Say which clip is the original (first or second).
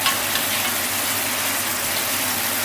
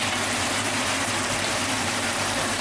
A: first